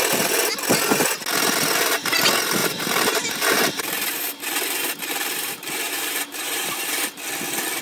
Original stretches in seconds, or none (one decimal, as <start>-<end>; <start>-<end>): 0.0-2.6; 7.0-7.8